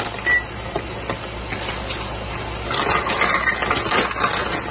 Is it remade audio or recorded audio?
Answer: recorded